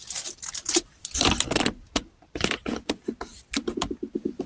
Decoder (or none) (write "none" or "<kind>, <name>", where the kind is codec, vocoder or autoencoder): none